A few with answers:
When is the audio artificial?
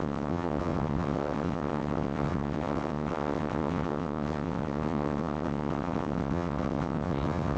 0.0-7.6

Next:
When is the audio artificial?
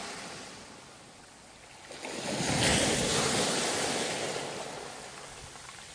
none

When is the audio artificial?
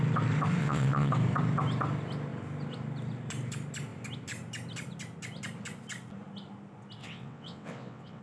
0.6-1.1; 7.0-8.2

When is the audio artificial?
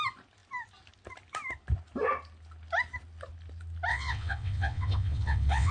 3.9-5.7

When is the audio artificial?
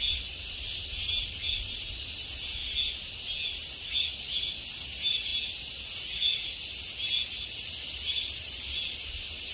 none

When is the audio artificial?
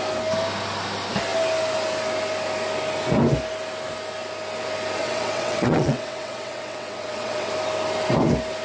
5.0-7.5